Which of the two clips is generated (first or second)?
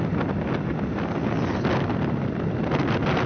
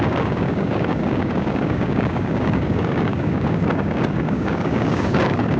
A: second